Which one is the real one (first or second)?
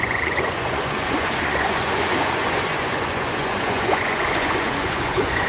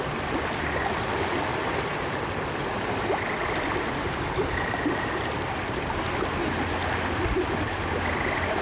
second